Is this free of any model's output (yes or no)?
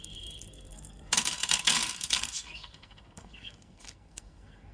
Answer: no